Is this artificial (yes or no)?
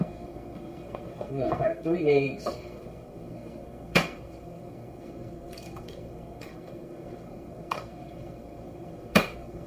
yes